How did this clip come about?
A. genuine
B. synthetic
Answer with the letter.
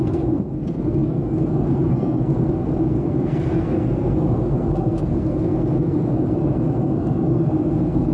B